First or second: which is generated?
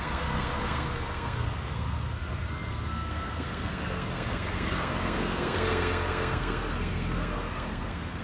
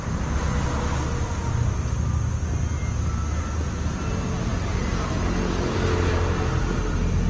first